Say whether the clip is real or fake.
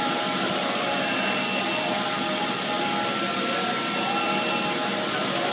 real